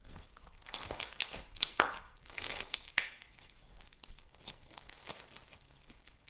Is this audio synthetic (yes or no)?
yes